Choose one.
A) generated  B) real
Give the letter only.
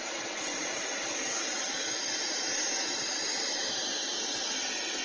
A